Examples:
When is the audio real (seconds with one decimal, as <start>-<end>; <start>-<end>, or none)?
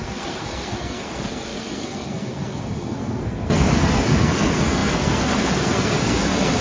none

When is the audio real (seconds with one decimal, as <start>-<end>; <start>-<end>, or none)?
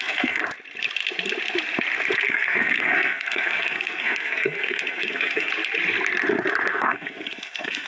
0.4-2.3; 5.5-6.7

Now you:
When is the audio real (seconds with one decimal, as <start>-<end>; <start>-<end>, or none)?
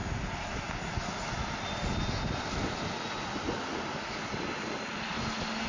0.0-5.7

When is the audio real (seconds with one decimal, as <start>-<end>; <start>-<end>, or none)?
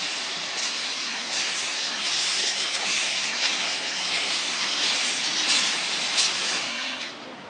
0.0-0.6; 4.9-6.3; 7.1-7.5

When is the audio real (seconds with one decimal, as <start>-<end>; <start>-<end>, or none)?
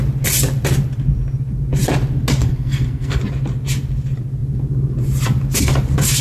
0.0-2.4; 3.2-6.2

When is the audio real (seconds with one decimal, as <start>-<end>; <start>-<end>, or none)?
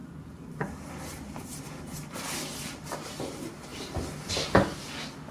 0.0-5.3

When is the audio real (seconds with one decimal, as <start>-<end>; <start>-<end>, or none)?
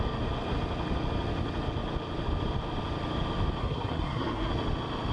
0.0-3.6; 4.5-5.1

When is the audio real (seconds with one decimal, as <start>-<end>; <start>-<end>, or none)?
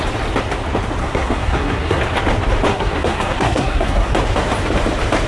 0.0-1.0; 2.0-2.7; 4.1-5.3